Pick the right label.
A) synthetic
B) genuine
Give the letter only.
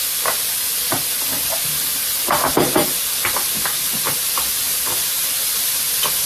B